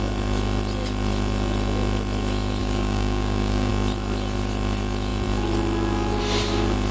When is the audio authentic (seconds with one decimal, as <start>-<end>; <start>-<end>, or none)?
0.0-2.6; 3.7-6.9